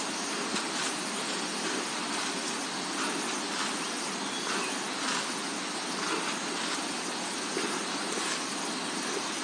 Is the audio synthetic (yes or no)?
no